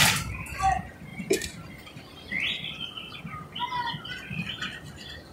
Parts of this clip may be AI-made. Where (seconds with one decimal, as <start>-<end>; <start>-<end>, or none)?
1.1-3.2